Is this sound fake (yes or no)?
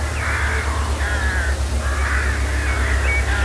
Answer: no